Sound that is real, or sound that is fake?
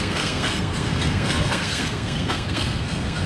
fake